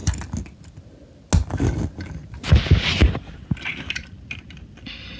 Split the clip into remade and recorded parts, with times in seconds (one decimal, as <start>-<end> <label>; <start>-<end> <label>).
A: 0.0-5.2 recorded